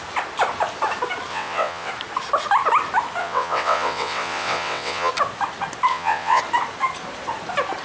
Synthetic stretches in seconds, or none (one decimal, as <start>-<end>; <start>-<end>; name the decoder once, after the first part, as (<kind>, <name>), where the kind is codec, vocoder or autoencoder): 1.3-1.9 (vocoder, WaveNeXt); 3.2-5.1; 5.9-6.4